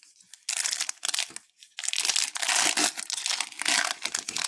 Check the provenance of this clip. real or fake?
real